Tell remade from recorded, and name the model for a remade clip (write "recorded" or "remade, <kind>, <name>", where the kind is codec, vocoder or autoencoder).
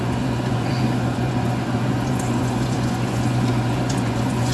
remade, vocoder, Vocos